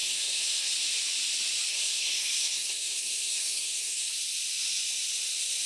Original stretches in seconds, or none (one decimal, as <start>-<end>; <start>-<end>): 0.7-1.7; 4.1-5.7